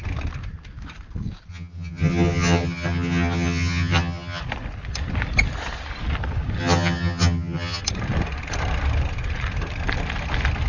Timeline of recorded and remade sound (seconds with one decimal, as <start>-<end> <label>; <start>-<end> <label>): 0.0-1.5 recorded; 1.5-4.4 remade; 4.4-6.6 recorded; 6.6-7.8 remade; 7.8-10.7 recorded